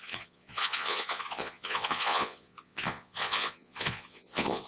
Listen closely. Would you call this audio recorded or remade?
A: remade